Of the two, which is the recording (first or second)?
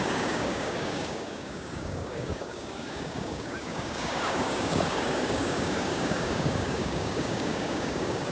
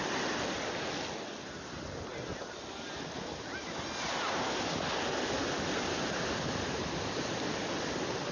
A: second